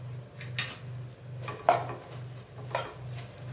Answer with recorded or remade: recorded